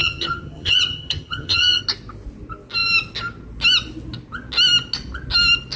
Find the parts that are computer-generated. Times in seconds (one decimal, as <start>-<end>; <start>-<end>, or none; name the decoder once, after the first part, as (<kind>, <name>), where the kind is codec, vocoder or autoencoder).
0.0-1.8 (vocoder, HiFi-GAN)